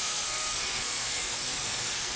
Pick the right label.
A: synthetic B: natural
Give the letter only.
A